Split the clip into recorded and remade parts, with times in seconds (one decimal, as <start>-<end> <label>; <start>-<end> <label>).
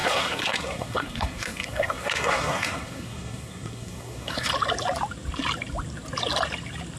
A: 0.0-4.5 remade; 4.5-7.0 recorded